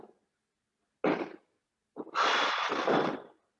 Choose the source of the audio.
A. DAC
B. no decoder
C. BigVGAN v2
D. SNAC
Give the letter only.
B